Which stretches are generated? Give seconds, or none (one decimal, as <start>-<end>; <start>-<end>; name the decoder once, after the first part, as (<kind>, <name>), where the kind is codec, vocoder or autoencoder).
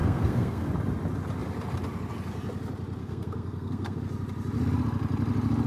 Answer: 0.0-0.7 (codec, SNAC); 3.0-4.0